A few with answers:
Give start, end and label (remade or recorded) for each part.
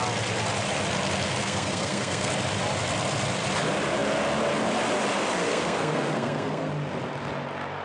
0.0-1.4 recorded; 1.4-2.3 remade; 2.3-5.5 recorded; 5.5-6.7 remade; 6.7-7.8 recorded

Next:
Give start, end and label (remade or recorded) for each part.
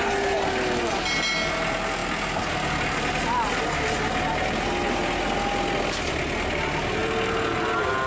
0.0-8.1 recorded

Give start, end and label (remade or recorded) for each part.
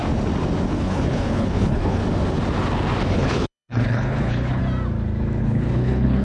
0.0-0.7 recorded; 0.7-2.0 remade; 2.0-3.1 recorded; 3.1-4.6 remade; 4.6-5.4 recorded; 5.4-6.2 remade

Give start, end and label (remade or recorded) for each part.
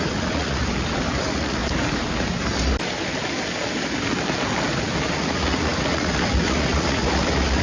0.0-0.6 remade; 0.6-1.2 recorded; 1.2-1.6 remade; 1.6-5.1 recorded; 5.1-7.6 remade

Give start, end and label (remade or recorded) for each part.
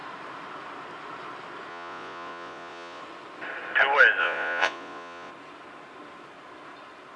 0.0-1.7 recorded; 1.7-3.0 remade; 3.0-4.2 recorded; 4.2-5.3 remade; 5.3-7.2 recorded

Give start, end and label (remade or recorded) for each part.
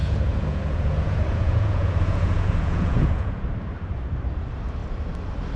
0.0-3.4 remade; 3.4-5.6 recorded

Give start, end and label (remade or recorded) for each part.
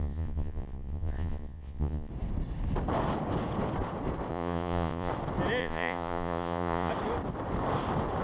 0.0-2.1 remade; 2.1-4.3 recorded; 4.3-5.1 remade; 5.1-5.6 recorded; 5.6-6.9 remade; 6.9-8.2 recorded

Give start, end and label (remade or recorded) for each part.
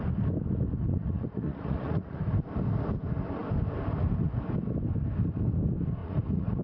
0.0-0.8 recorded; 0.8-2.2 remade; 2.2-6.0 recorded; 6.0-6.6 remade